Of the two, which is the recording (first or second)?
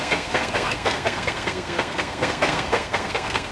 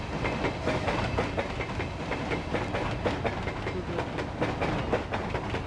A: second